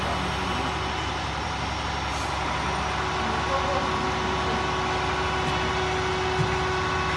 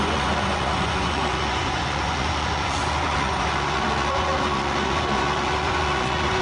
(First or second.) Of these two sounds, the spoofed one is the second